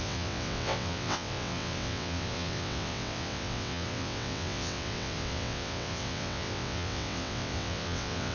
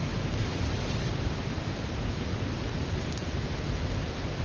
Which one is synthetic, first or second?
first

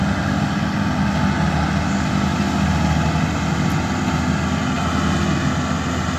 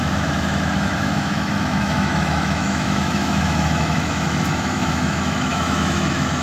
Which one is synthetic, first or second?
second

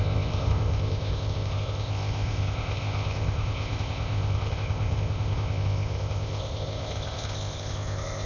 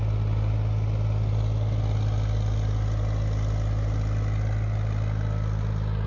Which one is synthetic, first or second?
first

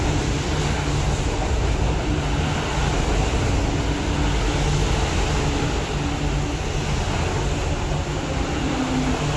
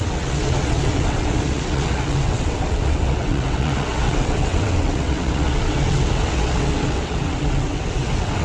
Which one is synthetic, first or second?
second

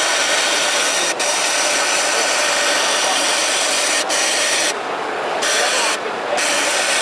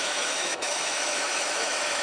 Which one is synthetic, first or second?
second